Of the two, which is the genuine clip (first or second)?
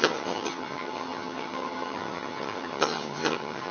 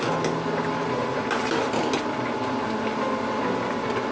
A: second